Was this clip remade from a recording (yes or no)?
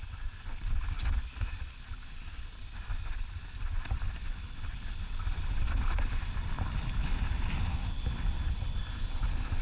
no